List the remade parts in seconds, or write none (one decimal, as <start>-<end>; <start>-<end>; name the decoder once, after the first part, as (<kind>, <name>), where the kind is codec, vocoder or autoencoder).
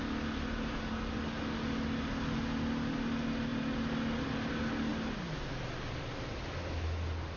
none